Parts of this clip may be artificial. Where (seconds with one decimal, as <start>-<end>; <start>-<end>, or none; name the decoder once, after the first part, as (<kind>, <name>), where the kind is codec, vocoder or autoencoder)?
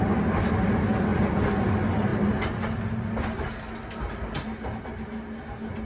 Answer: none